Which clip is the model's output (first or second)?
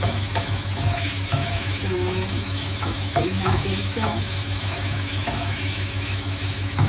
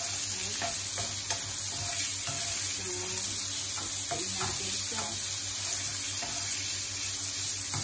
first